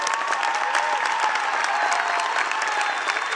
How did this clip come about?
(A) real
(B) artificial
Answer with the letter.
A